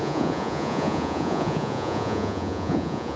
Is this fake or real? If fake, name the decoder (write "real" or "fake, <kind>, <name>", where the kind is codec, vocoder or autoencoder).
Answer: fake, vocoder, Vocos